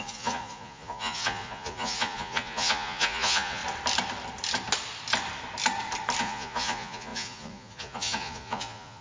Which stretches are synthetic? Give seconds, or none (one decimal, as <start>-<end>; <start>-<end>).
0.0-3.6; 6.2-9.0